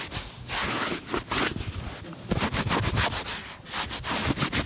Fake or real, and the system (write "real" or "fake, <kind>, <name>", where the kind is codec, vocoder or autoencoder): real